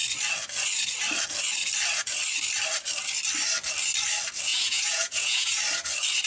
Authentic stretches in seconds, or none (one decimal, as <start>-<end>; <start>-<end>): 0.0-4.5; 5.6-6.3